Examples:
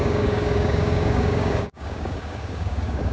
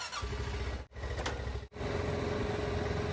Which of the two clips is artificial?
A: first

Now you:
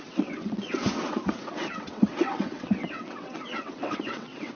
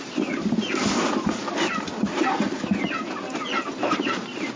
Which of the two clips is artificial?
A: first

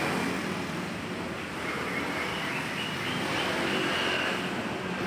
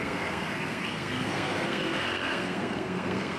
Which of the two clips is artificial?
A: second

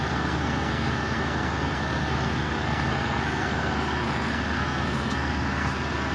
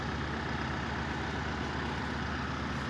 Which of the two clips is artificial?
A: first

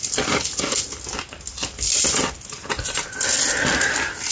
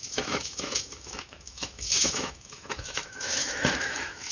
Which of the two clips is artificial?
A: second